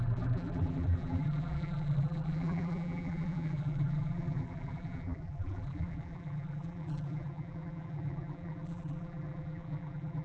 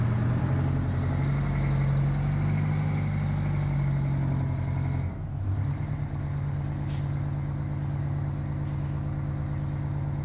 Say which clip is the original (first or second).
second